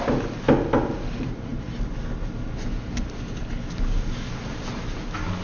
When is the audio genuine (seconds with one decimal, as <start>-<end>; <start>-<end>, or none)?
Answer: 0.0-5.4